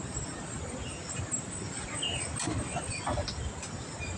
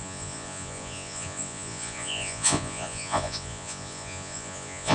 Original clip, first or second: first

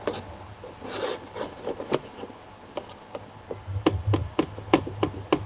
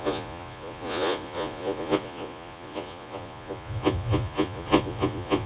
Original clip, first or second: first